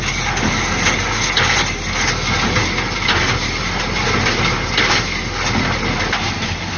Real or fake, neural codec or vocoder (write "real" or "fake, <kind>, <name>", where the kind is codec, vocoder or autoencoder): real